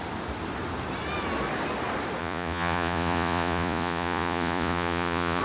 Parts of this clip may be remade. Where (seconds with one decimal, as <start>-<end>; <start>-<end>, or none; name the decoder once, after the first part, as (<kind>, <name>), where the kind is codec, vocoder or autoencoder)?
2.2-5.4 (vocoder, Vocos)